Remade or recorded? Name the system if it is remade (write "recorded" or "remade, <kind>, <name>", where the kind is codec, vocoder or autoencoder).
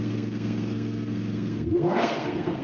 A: remade, codec, SNAC